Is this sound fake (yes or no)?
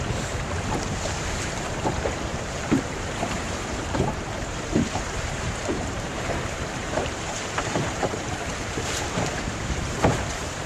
yes